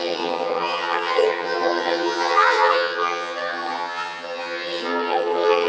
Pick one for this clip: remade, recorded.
remade